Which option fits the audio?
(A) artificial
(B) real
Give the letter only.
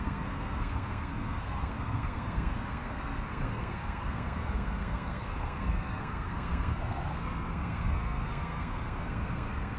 A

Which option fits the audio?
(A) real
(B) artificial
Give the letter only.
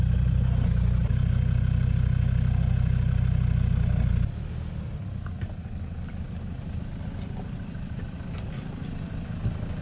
A